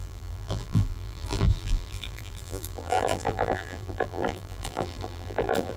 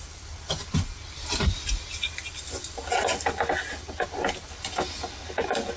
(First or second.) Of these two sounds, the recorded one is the second